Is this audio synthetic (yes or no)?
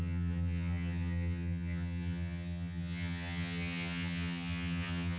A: yes